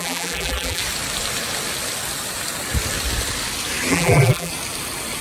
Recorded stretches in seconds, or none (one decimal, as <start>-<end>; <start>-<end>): 0.8-3.9; 4.5-5.2